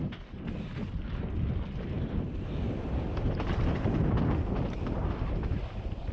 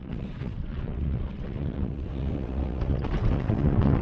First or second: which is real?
first